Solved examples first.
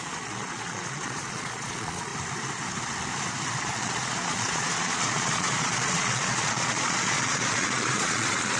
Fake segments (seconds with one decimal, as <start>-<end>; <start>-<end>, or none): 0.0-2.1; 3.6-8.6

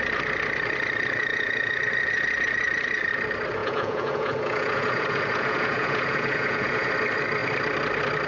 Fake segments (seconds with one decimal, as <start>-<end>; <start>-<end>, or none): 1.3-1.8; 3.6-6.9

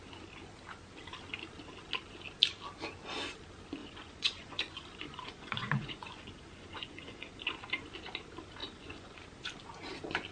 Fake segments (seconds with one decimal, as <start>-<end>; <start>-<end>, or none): 3.8-7.3; 8.6-9.2